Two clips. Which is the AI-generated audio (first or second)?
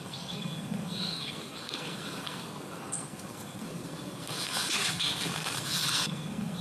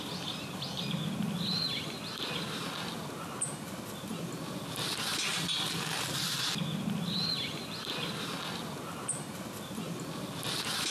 first